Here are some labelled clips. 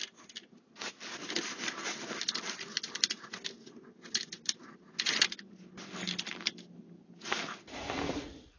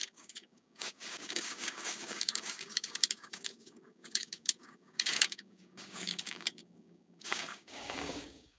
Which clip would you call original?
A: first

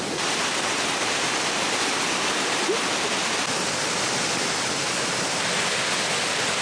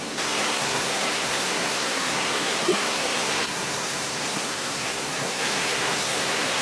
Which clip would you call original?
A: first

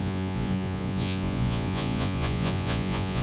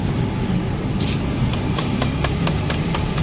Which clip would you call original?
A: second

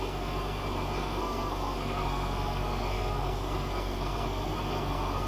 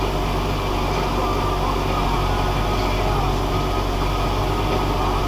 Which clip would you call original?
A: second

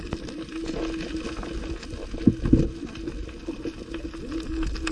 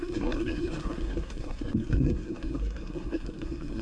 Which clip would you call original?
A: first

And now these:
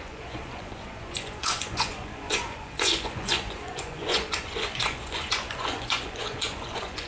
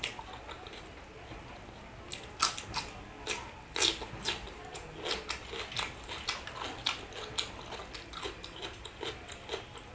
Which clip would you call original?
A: second